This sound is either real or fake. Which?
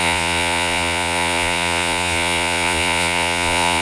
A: fake